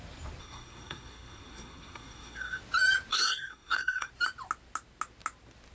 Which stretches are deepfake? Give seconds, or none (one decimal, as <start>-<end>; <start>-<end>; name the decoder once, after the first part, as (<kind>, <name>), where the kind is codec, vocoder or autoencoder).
0.4-2.6 (codec, SNAC); 3.1-4.1